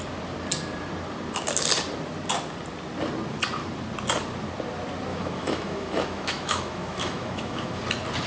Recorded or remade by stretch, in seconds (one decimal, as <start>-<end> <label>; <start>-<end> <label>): 0.0-5.1 recorded; 5.1-7.8 remade; 7.8-8.3 recorded